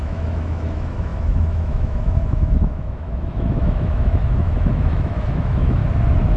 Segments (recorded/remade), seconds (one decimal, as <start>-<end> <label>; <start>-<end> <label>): 0.0-5.8 remade; 5.8-6.4 recorded